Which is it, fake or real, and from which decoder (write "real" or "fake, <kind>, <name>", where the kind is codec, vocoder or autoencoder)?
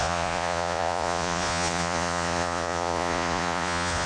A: fake, vocoder, Vocos